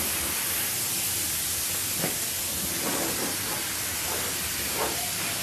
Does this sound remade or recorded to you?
recorded